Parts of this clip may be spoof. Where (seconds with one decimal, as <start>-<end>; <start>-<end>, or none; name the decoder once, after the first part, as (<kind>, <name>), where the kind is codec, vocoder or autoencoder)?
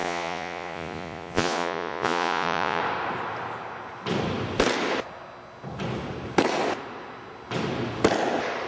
0.0-2.8 (vocoder, Vocos)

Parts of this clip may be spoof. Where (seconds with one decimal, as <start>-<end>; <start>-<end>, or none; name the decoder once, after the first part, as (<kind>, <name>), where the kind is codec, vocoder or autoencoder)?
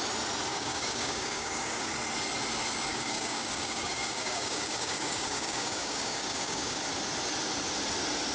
0.5-1.9 (codec, DAC); 2.9-6.8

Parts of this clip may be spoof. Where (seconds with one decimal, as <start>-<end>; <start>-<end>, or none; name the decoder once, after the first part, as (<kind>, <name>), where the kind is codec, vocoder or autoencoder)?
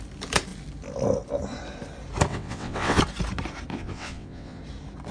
2.3-3.0 (vocoder, WaveNeXt); 3.7-4.6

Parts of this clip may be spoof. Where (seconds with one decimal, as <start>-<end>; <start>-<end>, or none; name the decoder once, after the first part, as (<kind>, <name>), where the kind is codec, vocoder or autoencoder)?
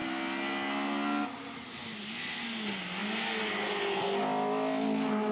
none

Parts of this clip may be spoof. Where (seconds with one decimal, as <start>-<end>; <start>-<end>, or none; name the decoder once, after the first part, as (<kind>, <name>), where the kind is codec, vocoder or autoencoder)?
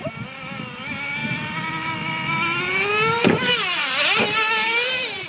none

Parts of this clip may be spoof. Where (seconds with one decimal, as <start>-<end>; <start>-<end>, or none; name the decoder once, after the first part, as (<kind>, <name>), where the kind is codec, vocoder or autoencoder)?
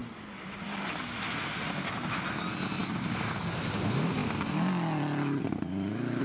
none